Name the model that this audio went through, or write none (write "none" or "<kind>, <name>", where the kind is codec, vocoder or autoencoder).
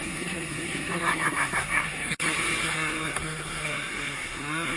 codec, SNAC